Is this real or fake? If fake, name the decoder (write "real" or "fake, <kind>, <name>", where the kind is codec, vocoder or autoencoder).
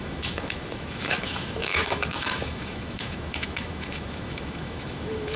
fake, autoencoder, DAC-VAE